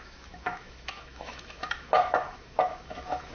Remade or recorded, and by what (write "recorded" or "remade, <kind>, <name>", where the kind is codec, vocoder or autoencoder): remade, autoencoder, DAC-VAE